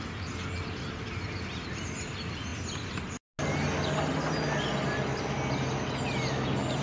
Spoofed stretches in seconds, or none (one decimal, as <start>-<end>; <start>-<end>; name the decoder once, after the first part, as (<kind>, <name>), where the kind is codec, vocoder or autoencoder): none